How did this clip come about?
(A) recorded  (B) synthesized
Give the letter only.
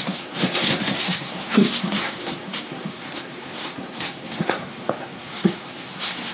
B